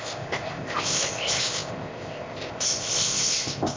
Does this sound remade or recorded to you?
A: remade